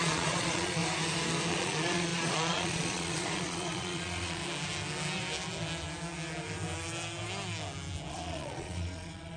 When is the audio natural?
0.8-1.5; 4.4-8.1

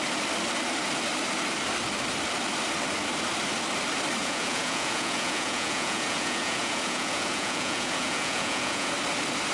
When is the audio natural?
0.0-4.2; 8.9-9.5

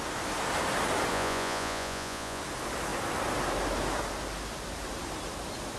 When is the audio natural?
0.0-1.1; 2.4-5.8